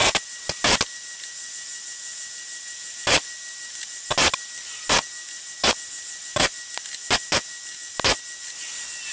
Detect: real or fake real